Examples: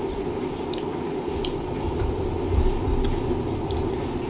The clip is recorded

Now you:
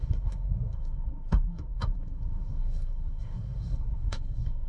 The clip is remade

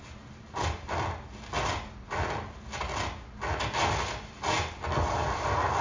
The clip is recorded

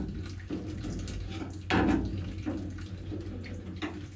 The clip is recorded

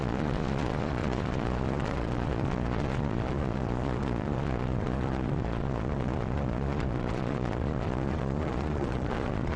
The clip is remade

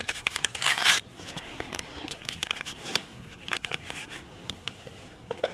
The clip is remade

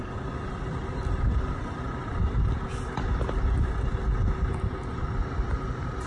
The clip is recorded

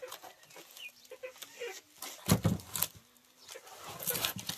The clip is recorded